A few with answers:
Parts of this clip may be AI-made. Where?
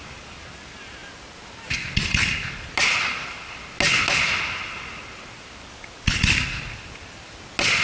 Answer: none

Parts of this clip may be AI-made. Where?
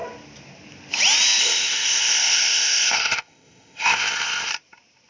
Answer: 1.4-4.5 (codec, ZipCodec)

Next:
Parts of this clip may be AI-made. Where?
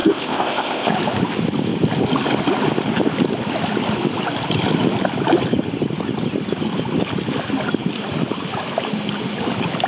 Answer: 0.0-0.9 (codec, ZipCodec)